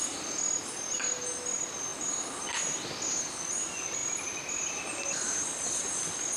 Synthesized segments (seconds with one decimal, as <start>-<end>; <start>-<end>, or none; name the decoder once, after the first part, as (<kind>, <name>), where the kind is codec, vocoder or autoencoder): none